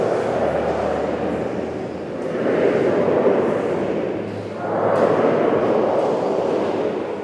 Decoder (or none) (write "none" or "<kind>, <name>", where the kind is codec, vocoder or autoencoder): none